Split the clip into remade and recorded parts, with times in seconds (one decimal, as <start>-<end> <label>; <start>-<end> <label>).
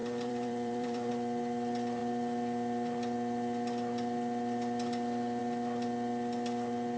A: 0.0-1.1 remade; 1.1-7.0 recorded